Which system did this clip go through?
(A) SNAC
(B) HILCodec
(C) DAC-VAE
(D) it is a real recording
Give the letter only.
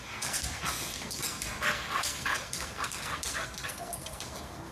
A